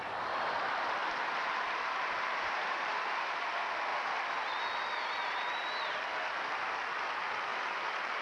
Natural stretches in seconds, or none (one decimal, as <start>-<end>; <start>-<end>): 0.0-1.0; 3.5-7.5